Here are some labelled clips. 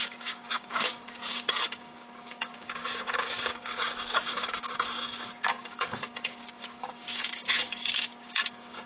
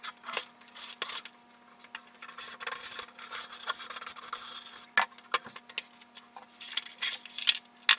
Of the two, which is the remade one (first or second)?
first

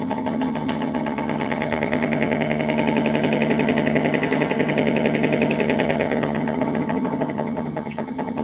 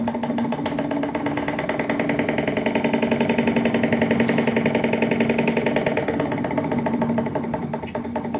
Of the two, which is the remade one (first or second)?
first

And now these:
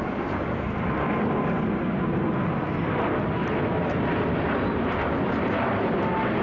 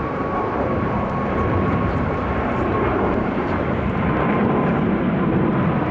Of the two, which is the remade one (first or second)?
second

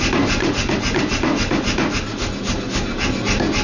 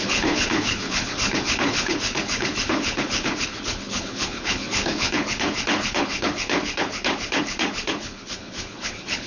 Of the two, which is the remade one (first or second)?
second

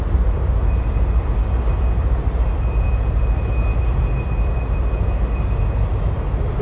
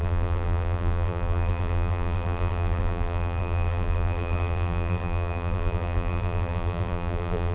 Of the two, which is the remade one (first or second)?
second